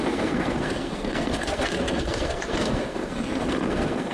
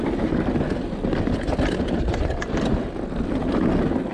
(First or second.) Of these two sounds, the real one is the second